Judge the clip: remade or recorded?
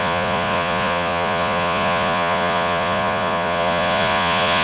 remade